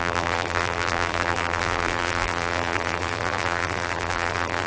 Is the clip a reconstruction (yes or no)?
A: yes